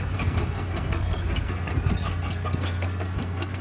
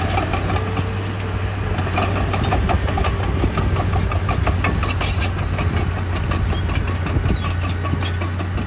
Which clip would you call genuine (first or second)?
second